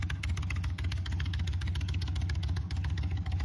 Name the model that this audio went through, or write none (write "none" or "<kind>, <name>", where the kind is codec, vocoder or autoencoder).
codec, DAC